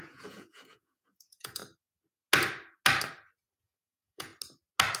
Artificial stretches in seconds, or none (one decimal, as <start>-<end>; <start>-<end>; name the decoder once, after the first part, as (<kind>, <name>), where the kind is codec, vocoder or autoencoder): 0.0-1.6 (vocoder, Vocos); 3.6-4.3